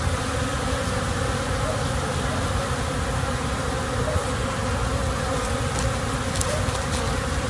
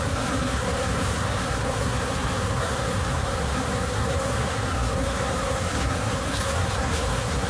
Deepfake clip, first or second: second